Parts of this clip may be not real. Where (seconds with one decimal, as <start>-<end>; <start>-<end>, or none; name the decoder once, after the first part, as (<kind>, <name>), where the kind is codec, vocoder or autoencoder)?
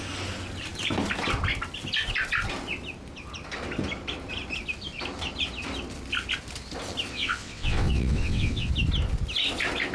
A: 7.1-8.7 (vocoder, WaveNeXt)